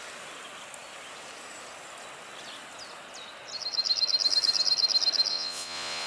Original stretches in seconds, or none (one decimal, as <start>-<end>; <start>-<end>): 0.0-5.3